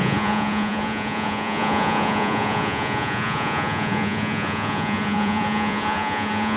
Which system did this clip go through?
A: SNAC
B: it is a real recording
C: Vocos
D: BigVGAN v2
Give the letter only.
C